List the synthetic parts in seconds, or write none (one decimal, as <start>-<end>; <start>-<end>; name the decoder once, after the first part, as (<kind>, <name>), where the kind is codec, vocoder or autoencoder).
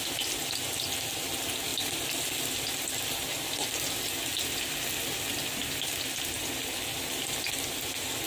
none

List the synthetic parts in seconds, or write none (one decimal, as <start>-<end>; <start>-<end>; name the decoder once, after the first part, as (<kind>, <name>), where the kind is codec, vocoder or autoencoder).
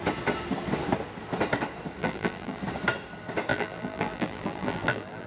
2.0-2.6 (vocoder, BigVGAN v2); 3.5-5.3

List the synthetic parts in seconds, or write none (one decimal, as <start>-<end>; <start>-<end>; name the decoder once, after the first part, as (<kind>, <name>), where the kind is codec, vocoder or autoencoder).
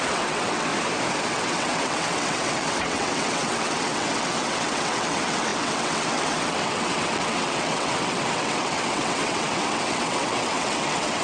0.0-0.7 (vocoder, WaveNeXt); 1.3-11.2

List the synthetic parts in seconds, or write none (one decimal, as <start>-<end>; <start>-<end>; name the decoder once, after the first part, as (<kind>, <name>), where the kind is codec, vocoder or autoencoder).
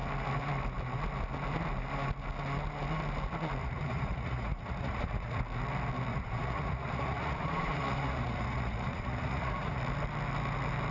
3.6-5.4 (vocoder, Vocos); 6.1-9.8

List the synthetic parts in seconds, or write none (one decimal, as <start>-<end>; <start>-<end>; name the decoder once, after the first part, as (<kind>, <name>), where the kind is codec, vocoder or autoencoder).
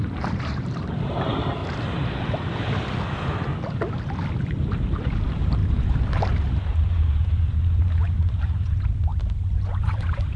0.0-1.6 (vocoder, BigVGAN v2); 4.3-5.6; 6.2-9.1; 9.7-10.4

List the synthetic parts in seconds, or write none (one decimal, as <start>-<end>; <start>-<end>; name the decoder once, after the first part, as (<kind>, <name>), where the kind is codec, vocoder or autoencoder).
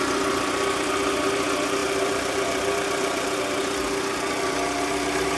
1.8-3.2 (vocoder, BigVGAN v2)